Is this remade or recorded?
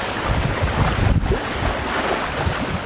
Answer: remade